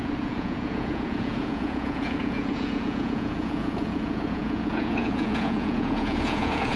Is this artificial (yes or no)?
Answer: yes